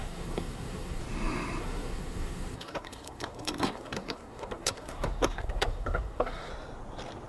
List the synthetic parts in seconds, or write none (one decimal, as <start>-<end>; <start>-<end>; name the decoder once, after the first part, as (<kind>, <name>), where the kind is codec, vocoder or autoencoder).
0.0-1.0 (codec, SNAC); 1.6-6.5